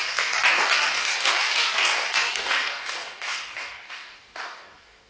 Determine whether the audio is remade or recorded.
remade